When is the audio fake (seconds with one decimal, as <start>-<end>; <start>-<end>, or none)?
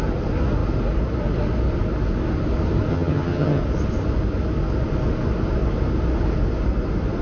2.9-3.6